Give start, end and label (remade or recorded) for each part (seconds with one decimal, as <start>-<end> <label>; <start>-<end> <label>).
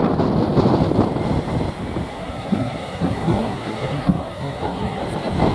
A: 0.0-2.1 recorded; 2.1-5.0 remade; 5.0-5.5 recorded